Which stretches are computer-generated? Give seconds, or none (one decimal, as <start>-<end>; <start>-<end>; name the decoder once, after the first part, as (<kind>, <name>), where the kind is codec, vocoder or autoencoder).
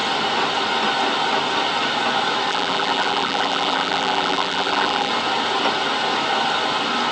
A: 2.5-5.1 (vocoder, BigVGAN v2)